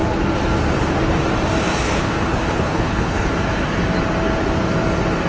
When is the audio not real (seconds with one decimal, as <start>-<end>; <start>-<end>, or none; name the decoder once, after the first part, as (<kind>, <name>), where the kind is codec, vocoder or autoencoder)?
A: 1.6-3.3 (codec, HILCodec)